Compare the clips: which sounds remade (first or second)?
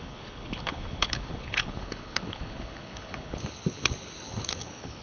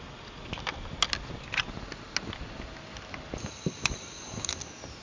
first